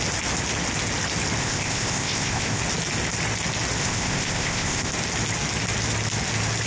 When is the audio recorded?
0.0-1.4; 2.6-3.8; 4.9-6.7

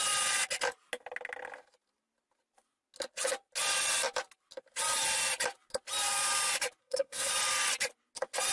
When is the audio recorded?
0.0-6.8; 7.3-8.5

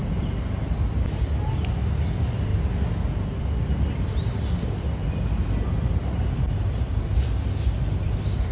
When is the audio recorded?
0.0-8.5

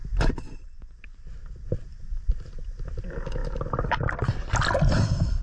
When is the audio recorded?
0.0-1.9; 2.5-5.4

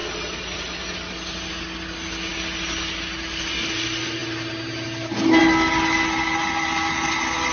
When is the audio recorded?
0.0-7.5

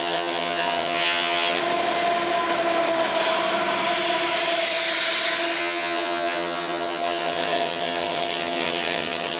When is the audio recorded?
1.6-5.6

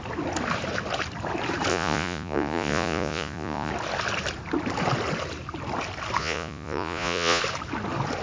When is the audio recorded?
0.0-1.7; 3.7-6.2; 7.4-8.2

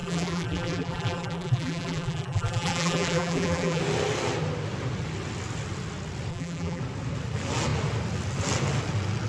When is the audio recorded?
3.8-6.3; 6.8-9.3